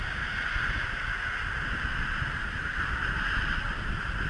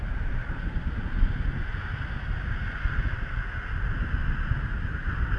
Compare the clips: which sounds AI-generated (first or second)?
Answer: first